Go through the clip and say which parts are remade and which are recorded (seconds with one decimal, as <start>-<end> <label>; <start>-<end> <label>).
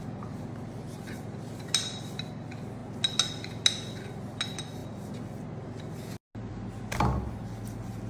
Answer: 0.0-8.1 recorded